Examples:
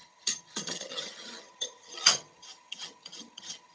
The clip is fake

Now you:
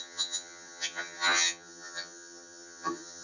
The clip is fake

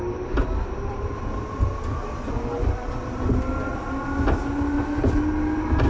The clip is real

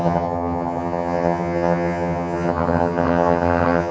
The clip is fake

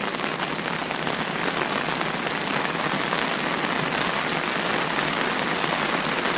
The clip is real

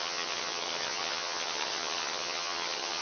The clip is fake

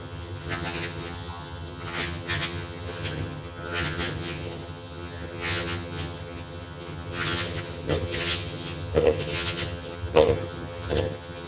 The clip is fake